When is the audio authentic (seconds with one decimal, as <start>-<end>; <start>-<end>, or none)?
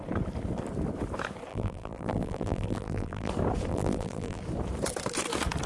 0.0-1.5; 3.3-3.7; 4.4-5.7